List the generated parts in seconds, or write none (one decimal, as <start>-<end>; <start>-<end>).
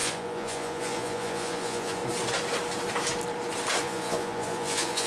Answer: 0.0-2.0; 3.8-5.1